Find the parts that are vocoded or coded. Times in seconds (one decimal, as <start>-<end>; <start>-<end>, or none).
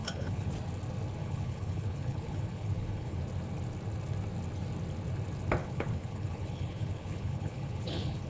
0.0-0.5; 1.2-3.2; 5.6-8.3